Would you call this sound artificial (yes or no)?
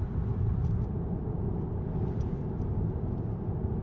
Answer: no